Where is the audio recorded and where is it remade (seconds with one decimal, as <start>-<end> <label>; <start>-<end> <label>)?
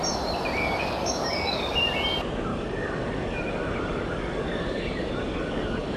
0.0-0.6 recorded; 0.6-1.8 remade; 1.8-2.5 recorded; 2.5-6.0 remade